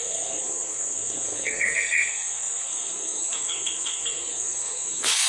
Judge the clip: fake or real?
fake